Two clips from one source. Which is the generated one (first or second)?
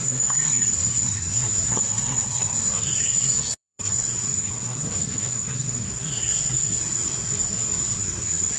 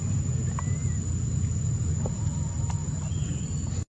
first